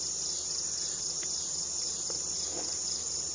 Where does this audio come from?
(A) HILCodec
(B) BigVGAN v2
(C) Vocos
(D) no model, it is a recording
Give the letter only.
D